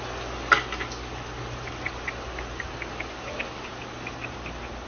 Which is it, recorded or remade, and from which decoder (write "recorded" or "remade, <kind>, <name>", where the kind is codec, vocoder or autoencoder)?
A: recorded